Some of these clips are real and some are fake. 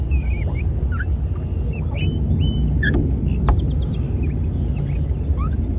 real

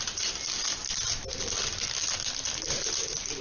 real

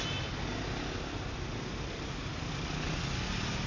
real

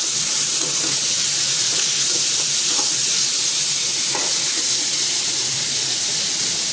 fake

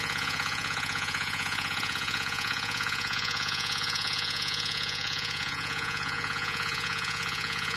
fake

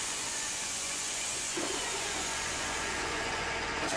fake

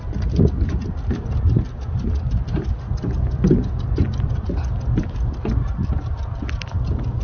real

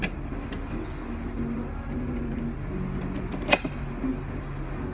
real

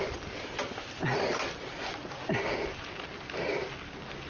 real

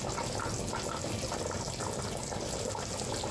real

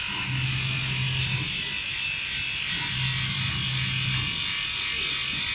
real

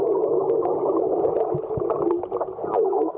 real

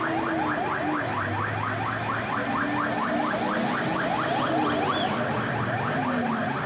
real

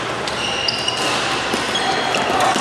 real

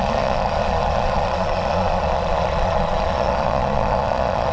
fake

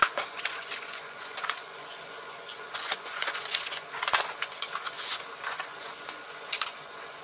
fake